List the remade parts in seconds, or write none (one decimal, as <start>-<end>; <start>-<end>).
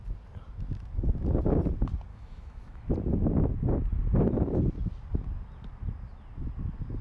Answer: 2.1-2.8